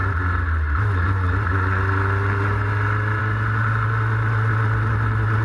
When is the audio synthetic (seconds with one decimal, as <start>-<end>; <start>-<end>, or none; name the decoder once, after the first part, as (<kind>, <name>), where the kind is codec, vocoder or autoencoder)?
none

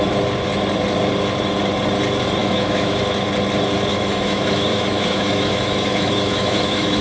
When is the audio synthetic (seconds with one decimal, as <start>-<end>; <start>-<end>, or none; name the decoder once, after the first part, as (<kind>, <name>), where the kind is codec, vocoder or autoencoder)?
2.4-3.0 (autoencoder, DAC-VAE); 3.9-7.0

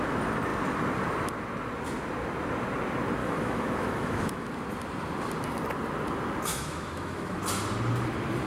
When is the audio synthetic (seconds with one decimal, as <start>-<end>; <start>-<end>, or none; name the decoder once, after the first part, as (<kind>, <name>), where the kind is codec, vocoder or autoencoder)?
3.2-4.5 (autoencoder, DAC-VAE); 6.5-7.4

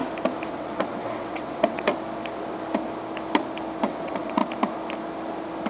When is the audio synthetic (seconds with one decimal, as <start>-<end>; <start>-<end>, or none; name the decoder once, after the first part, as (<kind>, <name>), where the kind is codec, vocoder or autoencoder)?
0.5-1.9 (vocoder, WaveNeXt); 3.8-4.4

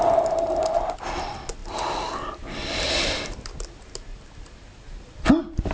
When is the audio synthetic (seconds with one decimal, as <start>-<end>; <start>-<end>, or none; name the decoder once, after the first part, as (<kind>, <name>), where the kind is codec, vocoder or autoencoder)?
none

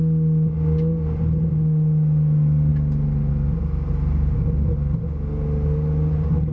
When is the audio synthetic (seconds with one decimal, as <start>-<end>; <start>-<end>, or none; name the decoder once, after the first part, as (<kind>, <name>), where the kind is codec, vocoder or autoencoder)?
none

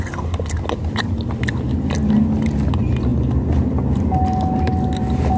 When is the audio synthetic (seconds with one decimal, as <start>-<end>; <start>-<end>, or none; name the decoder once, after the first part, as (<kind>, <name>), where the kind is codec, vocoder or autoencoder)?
none

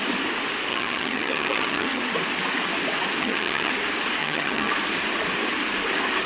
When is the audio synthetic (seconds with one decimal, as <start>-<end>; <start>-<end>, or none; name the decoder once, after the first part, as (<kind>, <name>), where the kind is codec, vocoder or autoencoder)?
0.7-2.0 (vocoder, HiFi-GAN); 3.2-3.7; 4.2-4.7